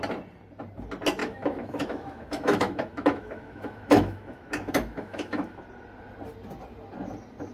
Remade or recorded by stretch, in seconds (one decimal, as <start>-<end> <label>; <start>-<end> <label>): 0.0-1.2 recorded; 1.2-5.6 remade; 5.6-7.5 recorded